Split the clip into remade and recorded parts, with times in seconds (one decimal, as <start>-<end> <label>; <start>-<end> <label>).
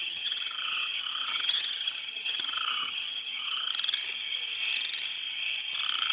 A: 0.0-3.7 remade; 3.7-6.1 recorded